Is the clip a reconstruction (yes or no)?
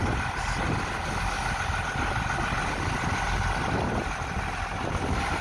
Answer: no